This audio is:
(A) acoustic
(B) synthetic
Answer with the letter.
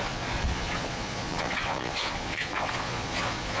B